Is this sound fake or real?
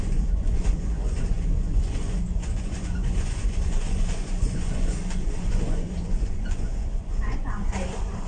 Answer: fake